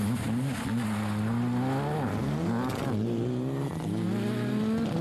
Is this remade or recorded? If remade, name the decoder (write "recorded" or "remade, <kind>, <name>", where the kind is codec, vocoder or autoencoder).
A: recorded